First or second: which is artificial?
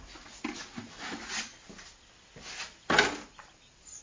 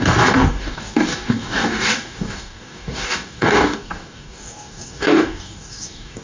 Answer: second